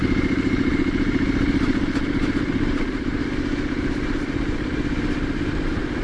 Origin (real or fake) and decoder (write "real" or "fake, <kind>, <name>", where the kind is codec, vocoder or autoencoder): fake, vocoder, BigVGAN v2